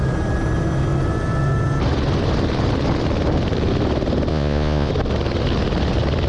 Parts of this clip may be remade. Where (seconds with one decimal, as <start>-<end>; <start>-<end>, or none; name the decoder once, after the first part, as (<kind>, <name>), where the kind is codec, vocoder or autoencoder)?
4.3-4.9 (vocoder, Vocos)